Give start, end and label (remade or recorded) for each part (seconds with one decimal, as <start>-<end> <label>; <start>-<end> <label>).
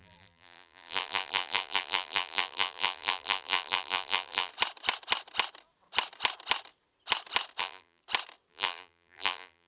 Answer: 0.0-4.5 remade; 4.5-7.6 recorded; 7.6-8.0 remade; 8.0-8.5 recorded; 8.5-9.7 remade